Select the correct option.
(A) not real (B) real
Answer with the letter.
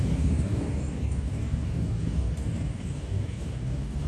A